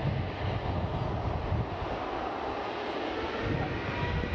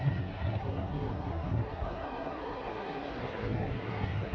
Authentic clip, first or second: first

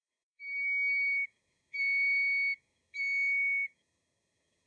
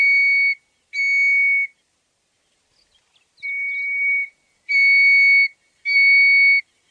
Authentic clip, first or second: second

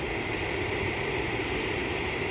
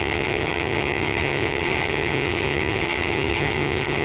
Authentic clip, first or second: first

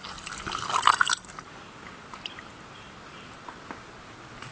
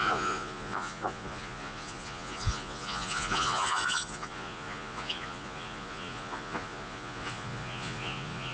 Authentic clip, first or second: first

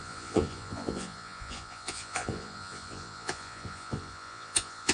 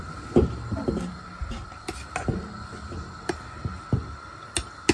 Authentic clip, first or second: second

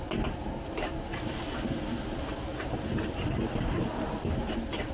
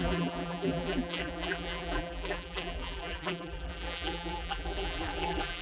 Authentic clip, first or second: first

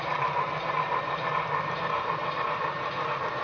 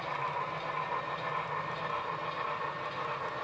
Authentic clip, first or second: second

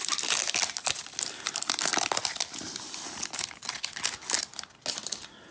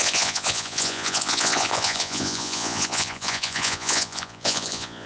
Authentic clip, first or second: first